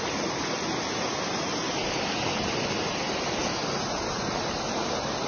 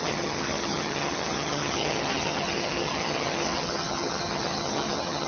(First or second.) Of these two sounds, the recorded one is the first